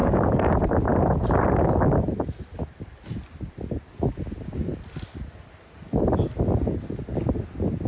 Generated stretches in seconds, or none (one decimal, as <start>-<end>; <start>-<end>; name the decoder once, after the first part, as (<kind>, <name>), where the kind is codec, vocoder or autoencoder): 0.0-0.5 (codec, DAC)